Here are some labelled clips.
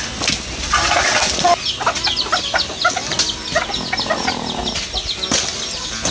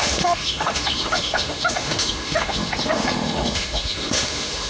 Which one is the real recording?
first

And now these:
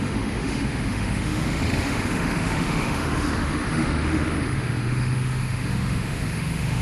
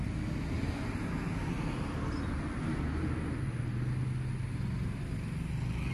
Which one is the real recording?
second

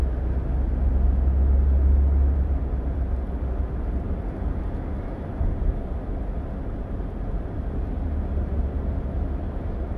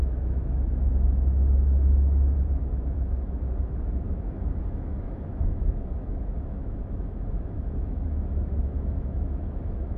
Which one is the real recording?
first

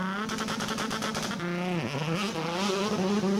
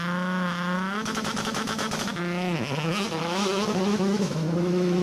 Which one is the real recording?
first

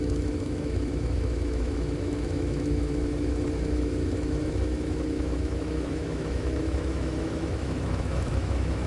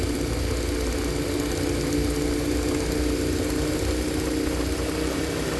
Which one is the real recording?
second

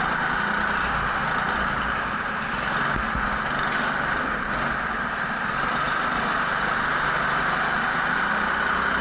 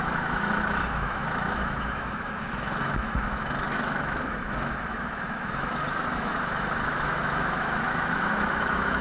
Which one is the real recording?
first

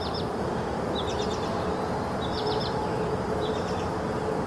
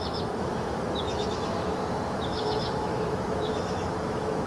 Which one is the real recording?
first